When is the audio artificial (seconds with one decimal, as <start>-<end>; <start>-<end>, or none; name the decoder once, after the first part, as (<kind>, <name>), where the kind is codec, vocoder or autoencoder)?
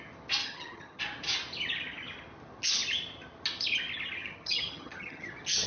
0.4-1.0 (vocoder, HiFi-GAN); 4.2-5.3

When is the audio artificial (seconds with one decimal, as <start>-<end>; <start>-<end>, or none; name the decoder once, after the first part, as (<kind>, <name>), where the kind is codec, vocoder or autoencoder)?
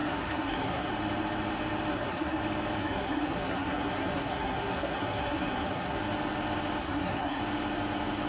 0.0-0.9 (codec, SNAC); 1.9-2.4; 2.8-6.0; 6.8-7.4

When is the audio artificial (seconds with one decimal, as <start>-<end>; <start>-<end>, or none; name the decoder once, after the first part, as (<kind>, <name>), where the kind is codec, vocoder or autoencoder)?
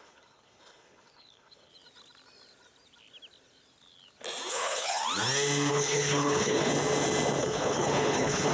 0.0-1.7 (codec, HILCodec); 4.5-5.0; 5.7-6.7; 7.4-8.5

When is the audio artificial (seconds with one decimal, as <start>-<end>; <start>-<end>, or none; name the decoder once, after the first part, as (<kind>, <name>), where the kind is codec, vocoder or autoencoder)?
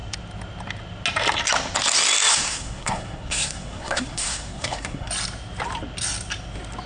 2.3-5.1 (codec, SNAC)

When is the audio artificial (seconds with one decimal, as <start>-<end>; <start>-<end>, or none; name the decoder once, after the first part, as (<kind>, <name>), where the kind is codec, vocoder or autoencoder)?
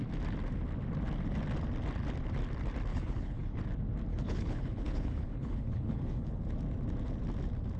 2.9-3.6 (codec, HILCodec); 4.1-6.4